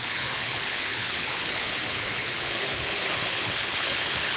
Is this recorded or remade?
remade